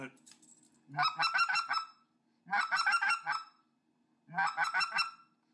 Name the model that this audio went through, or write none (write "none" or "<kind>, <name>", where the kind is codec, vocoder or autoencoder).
none